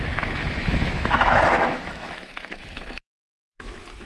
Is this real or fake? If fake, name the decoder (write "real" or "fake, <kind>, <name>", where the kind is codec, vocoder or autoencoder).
fake, autoencoder, DAC-VAE